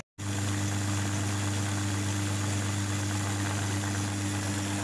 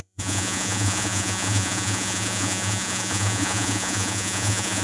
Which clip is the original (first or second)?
first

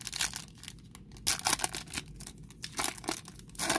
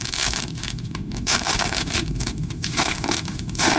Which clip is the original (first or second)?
first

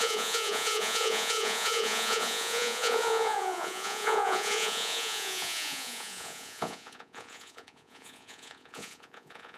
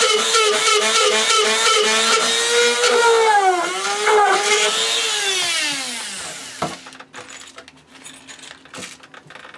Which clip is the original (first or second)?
second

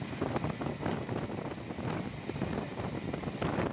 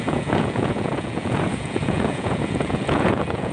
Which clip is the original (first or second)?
first